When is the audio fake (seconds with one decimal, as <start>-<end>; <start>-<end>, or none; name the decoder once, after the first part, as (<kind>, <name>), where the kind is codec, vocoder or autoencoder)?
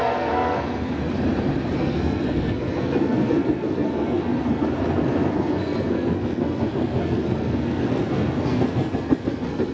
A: 0.0-1.0 (codec, SNAC); 1.8-9.7